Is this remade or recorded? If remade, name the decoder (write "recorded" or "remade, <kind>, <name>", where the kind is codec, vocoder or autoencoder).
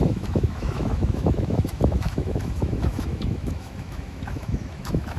remade, autoencoder, DAC-VAE